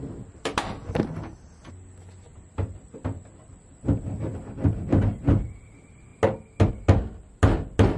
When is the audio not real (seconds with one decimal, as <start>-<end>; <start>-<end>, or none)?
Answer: 2.3-3.0